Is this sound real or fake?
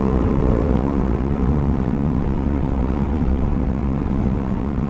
fake